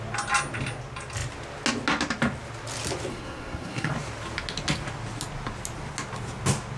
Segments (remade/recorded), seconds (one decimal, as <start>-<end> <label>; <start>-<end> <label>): 0.0-3.1 recorded; 3.1-3.9 remade; 3.9-6.8 recorded